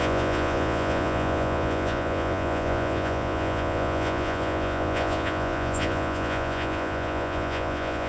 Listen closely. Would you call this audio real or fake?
fake